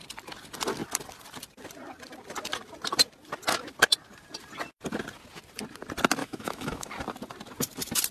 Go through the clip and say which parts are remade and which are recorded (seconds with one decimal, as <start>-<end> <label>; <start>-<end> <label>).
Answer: 0.0-6.2 recorded; 6.2-6.9 remade; 6.9-8.1 recorded